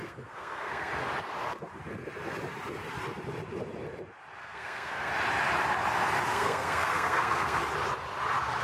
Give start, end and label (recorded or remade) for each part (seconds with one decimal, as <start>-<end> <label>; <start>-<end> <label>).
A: 0.0-0.9 remade; 0.9-4.4 recorded; 4.4-5.1 remade; 5.1-6.3 recorded; 6.3-7.6 remade; 7.6-8.6 recorded